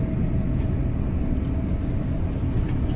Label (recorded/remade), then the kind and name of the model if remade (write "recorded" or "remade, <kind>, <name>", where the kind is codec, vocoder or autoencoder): recorded